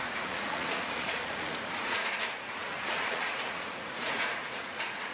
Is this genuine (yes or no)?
no